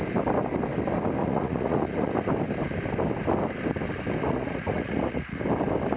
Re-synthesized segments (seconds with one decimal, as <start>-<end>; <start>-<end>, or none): 1.2-2.1; 4.2-5.4